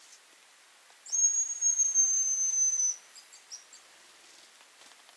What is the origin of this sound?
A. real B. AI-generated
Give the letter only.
A